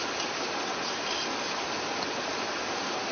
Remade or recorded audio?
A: recorded